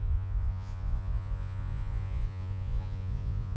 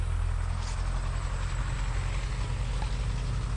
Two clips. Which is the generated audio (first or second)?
first